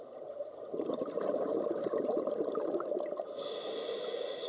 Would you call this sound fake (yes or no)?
no